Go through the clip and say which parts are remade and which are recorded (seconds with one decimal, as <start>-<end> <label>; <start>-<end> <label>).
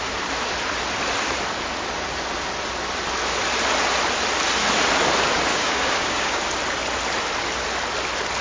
0.0-5.5 recorded; 5.5-6.4 remade; 6.4-8.4 recorded